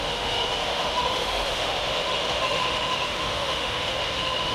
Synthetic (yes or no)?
yes